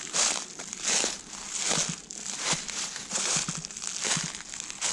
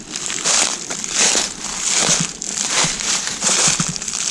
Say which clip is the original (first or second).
first